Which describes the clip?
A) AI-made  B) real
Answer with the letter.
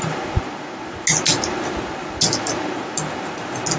B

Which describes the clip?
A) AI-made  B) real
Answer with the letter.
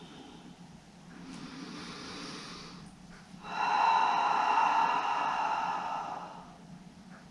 B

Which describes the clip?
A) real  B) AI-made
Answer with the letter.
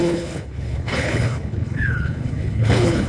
B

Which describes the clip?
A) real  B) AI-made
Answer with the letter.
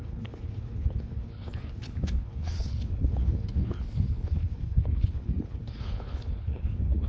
B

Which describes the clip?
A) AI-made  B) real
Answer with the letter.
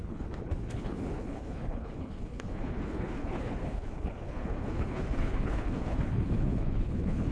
A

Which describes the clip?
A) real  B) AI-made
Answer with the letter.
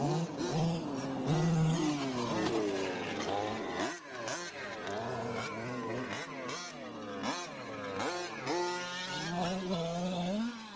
A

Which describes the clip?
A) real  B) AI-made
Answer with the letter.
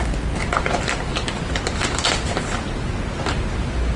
A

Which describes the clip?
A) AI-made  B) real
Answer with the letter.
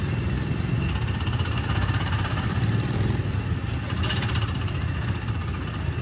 B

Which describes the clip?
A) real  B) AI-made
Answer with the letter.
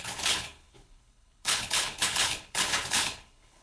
B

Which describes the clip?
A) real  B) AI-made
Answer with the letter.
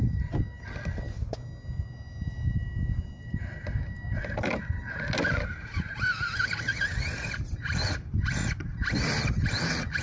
A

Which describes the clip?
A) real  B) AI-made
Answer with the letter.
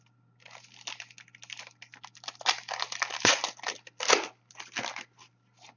A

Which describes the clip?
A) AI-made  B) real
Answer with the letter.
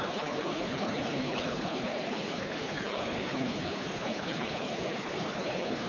A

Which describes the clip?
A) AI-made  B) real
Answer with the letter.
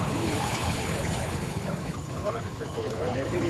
A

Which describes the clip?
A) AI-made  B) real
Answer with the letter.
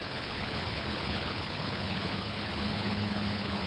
A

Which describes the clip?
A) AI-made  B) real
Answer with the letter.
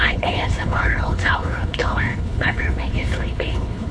A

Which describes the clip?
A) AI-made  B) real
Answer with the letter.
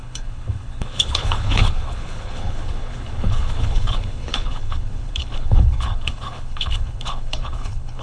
A